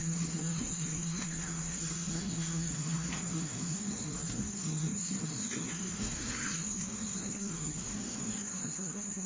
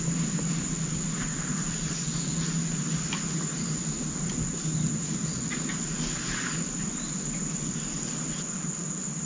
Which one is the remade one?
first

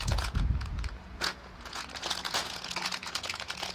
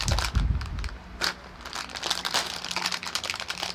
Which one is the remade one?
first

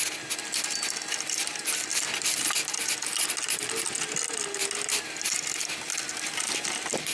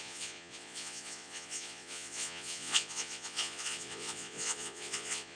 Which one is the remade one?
second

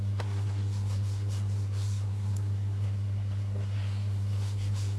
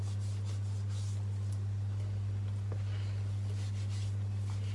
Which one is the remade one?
first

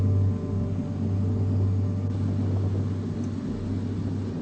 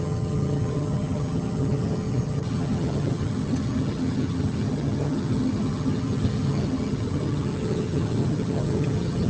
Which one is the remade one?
second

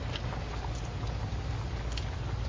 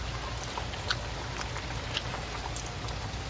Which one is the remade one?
first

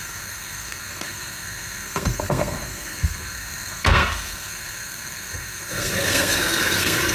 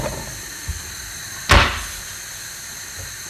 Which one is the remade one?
first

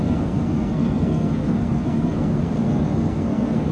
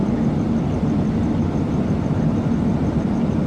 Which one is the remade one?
first